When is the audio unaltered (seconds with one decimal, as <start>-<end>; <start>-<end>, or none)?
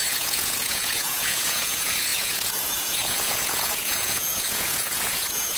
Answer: none